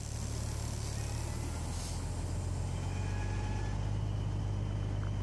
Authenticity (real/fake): real